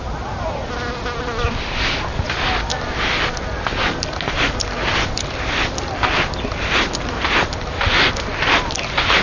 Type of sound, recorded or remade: recorded